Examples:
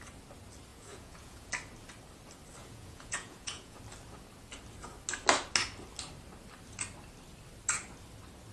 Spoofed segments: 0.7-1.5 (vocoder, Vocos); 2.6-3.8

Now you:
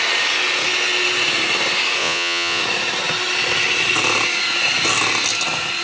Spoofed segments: 2.0-2.6 (vocoder, Vocos)

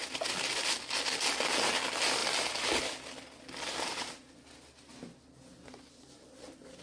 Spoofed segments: none

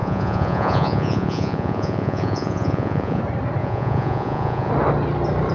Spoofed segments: 0.0-3.2 (vocoder, Vocos); 3.6-4.7

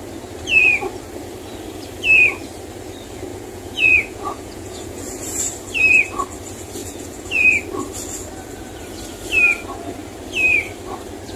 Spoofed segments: 3.3-5.4 (vocoder, Vocos); 6.8-7.5

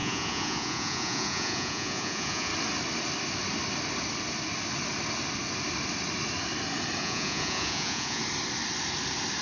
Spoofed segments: 0.0-2.5 (vocoder, Vocos); 7.0-8.2

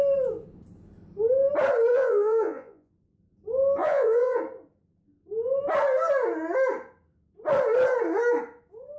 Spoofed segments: 1.9-2.9 (vocoder, Vocos); 3.8-4.4